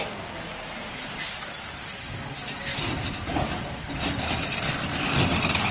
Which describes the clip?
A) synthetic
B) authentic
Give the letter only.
B